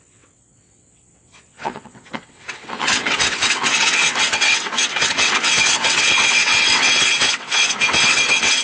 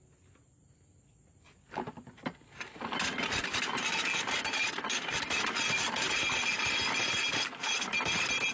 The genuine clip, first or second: second